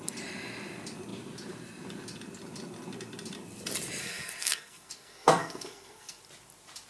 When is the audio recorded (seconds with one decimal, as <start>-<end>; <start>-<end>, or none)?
0.0-4.0; 6.2-6.9